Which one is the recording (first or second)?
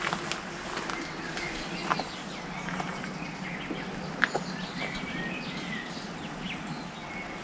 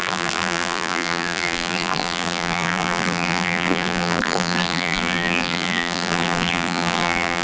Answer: first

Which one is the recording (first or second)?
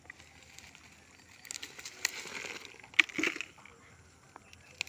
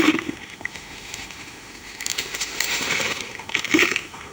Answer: first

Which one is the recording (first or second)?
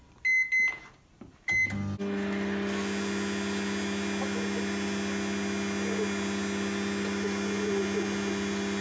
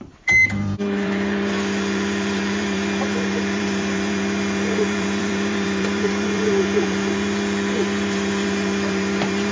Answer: first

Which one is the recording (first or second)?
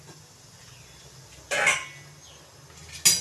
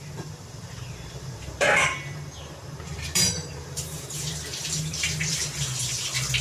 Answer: first